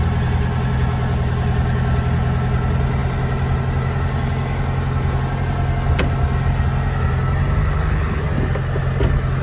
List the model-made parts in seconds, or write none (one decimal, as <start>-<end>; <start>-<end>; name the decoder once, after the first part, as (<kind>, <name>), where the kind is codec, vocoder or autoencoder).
7.6-8.2 (codec, HILCodec)